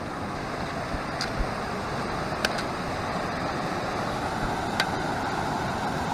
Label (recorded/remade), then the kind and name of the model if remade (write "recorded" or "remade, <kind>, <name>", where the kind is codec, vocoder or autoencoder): recorded